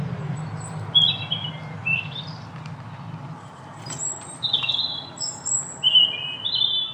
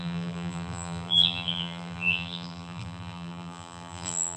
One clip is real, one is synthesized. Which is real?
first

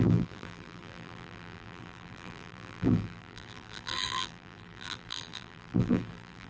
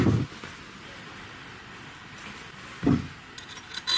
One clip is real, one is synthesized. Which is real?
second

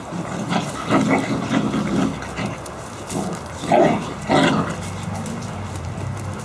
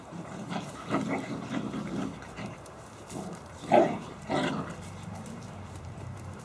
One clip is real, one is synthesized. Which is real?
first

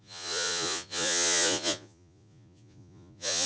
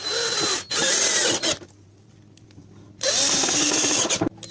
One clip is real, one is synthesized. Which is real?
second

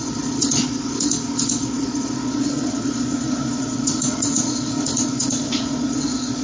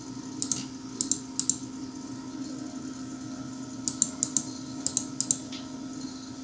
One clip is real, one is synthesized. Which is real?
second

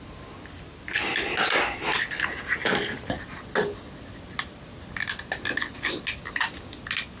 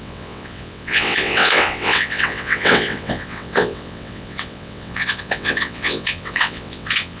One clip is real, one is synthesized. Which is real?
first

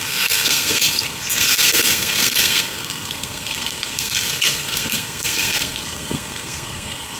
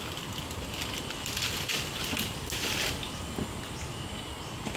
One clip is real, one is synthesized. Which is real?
second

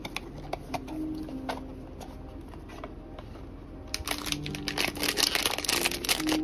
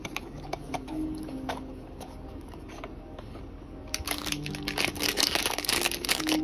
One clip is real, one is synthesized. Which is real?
first